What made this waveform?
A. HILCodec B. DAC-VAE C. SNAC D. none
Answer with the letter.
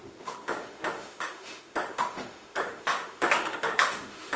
B